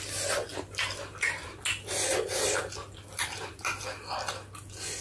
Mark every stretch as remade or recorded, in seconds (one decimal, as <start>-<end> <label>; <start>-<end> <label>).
0.0-5.0 recorded